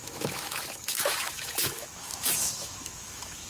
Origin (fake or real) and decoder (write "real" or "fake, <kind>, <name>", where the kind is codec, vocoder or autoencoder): fake, autoencoder, DAC-VAE